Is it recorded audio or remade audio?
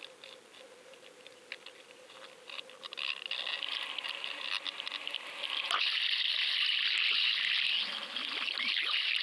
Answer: recorded